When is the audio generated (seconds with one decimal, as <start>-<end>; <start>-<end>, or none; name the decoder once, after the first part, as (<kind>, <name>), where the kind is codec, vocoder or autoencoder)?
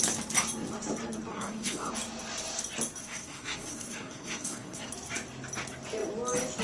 1.3-1.9 (codec, SNAC); 3.0-4.9